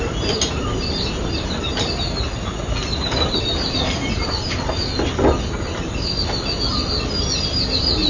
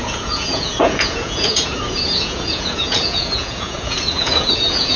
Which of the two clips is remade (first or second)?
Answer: second